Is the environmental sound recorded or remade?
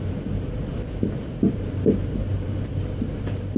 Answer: remade